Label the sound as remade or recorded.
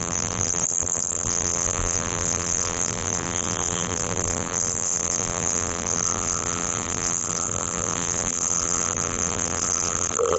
remade